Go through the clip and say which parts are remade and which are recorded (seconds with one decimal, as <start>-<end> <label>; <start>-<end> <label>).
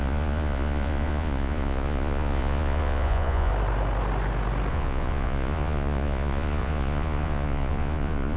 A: 0.0-3.5 remade; 3.5-4.7 recorded; 4.7-8.4 remade